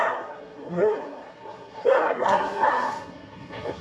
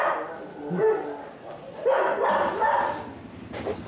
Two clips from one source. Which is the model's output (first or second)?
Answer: first